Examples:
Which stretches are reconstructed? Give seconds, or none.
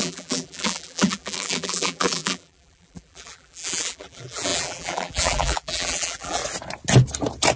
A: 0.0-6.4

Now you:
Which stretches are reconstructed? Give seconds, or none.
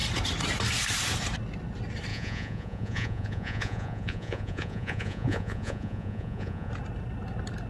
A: 2.1-6.7